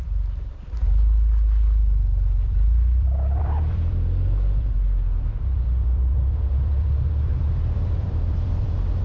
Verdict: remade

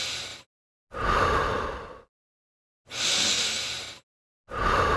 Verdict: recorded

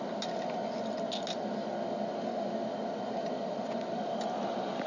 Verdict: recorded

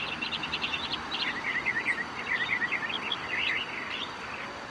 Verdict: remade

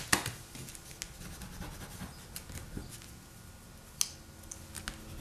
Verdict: recorded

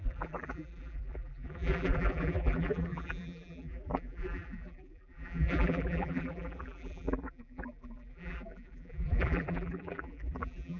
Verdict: remade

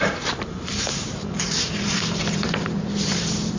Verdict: remade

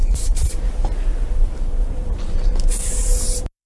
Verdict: remade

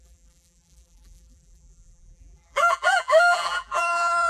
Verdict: remade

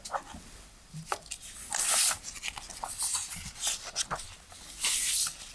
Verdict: recorded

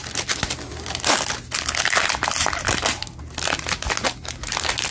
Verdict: recorded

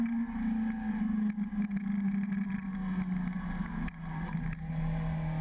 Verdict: recorded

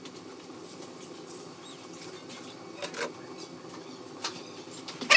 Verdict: recorded